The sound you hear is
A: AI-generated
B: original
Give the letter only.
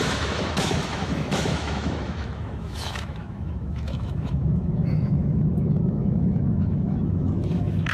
A